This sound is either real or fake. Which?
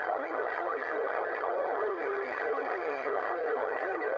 fake